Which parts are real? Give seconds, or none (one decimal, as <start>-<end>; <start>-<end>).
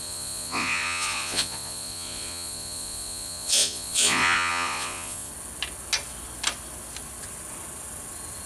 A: 5.3-8.5